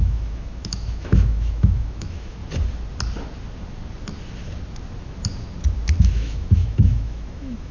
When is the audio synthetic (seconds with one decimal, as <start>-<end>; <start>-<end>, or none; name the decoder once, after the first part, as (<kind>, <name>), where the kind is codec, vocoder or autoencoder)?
0.0-2.4 (autoencoder, DAC-VAE); 6.0-7.7